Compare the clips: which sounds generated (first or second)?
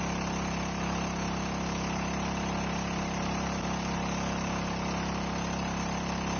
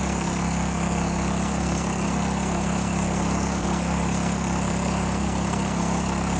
second